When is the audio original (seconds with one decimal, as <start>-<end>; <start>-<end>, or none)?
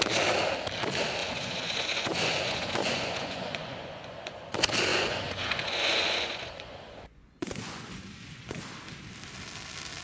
0.0-1.2; 4.5-4.9; 8.6-10.0